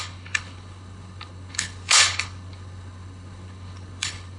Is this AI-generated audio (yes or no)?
yes